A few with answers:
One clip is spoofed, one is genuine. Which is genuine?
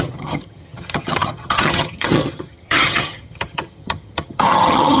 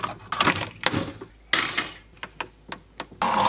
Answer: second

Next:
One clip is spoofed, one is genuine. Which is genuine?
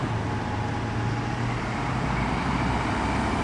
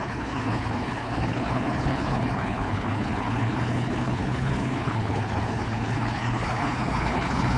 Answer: first